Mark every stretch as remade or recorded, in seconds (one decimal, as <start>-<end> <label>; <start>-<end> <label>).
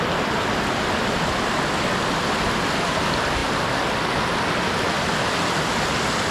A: 0.0-6.3 recorded